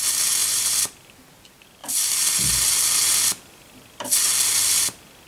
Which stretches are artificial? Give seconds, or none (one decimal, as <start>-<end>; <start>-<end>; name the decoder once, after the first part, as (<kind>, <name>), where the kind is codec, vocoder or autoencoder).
0.4-1.1 (vocoder, BigVGAN v2); 1.8-4.8